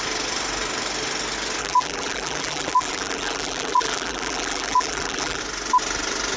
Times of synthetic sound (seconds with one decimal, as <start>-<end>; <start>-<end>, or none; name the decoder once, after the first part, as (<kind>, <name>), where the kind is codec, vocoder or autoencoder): 1.6-5.4 (vocoder, BigVGAN v2)